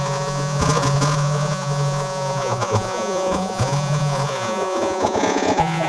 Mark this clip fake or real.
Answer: fake